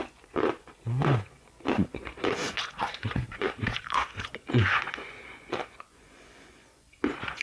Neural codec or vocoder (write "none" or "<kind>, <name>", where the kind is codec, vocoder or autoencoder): vocoder, Vocos